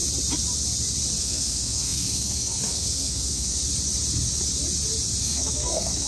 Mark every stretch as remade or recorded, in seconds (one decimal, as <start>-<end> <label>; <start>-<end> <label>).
0.0-1.2 recorded; 1.2-3.6 remade; 3.6-5.2 recorded; 5.2-6.1 remade